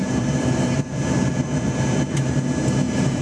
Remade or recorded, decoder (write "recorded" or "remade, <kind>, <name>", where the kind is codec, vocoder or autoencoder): remade, vocoder, BigVGAN v2